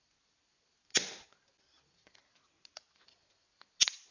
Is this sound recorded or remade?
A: recorded